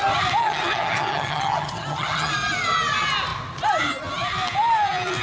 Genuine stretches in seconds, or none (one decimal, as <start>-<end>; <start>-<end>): 0.0-0.4; 2.3-5.2